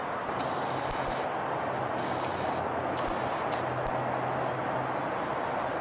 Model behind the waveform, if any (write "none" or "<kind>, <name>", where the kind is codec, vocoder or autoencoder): none